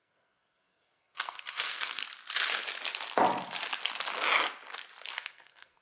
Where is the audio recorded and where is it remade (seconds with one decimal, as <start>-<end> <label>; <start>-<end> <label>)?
0.0-2.0 remade; 2.0-5.1 recorded; 5.1-5.8 remade